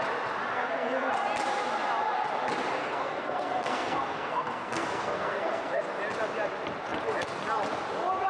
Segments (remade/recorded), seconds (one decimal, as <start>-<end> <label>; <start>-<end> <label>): 0.0-0.5 recorded; 0.5-1.1 remade; 1.1-2.8 recorded; 2.8-5.8 remade; 5.8-8.3 recorded